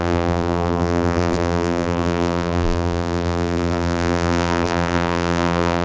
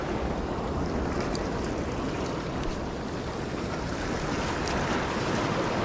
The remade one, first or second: first